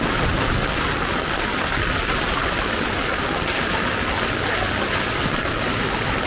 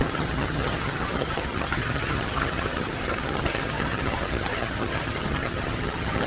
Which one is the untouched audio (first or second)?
first